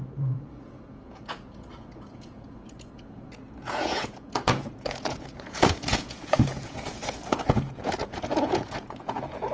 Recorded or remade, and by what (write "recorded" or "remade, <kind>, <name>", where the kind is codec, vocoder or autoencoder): remade, vocoder, Vocos